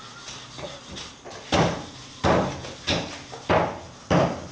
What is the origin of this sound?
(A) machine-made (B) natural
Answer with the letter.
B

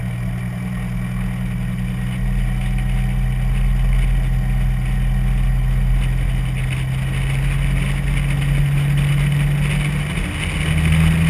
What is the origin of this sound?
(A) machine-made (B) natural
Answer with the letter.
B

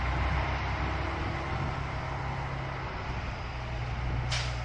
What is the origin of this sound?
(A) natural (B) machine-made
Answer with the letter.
A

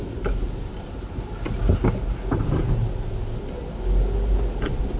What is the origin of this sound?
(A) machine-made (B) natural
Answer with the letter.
B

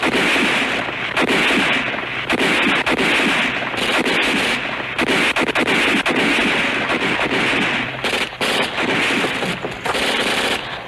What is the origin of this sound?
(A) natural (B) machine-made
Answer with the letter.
A